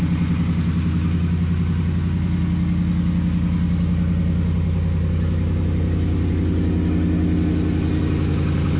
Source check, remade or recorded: recorded